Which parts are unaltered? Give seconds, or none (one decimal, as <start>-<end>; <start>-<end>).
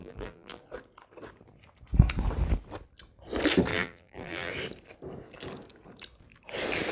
0.6-3.7; 4.5-6.9